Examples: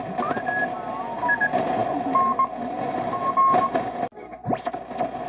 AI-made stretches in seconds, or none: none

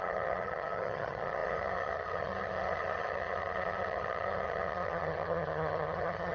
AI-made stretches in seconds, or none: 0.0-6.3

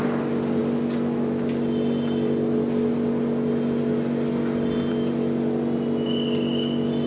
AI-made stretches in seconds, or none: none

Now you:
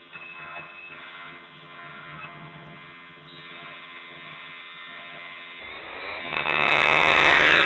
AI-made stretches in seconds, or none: 0.0-5.6; 6.2-7.7